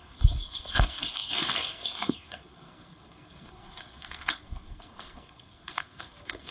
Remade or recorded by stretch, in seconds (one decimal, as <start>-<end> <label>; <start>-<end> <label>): 0.0-6.5 remade